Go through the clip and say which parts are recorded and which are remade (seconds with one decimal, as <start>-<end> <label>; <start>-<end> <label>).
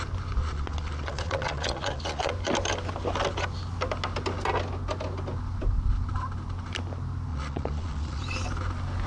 0.0-0.4 recorded; 0.4-2.3 remade; 2.3-7.3 recorded; 7.3-8.2 remade; 8.2-9.1 recorded